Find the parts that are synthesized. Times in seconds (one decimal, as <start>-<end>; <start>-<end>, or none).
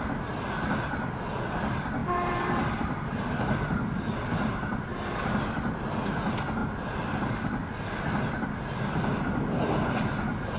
2.0-3.2